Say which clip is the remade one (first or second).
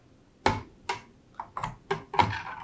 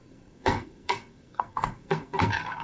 second